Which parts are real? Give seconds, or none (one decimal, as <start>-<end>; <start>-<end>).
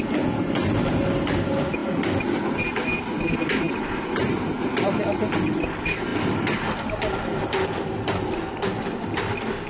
0.0-9.7